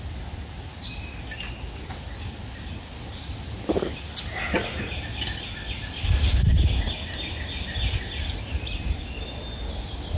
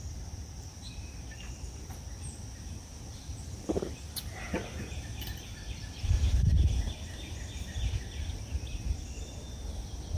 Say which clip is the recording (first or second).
first